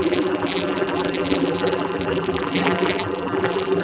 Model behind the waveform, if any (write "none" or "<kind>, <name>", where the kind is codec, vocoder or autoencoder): vocoder, BigVGAN v2